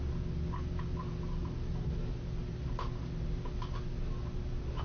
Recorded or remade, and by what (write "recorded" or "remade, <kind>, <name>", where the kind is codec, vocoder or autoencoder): recorded